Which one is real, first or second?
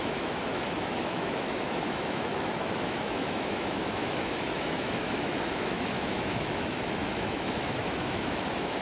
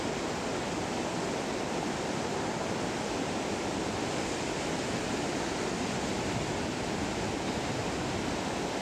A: second